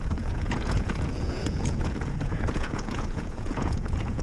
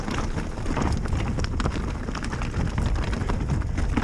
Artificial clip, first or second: first